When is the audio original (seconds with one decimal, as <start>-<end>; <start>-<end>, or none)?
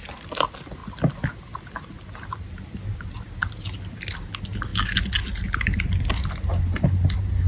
0.0-7.5